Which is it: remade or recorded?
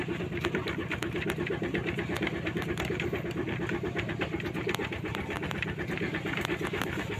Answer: remade